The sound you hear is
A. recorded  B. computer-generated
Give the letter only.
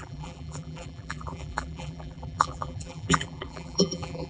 B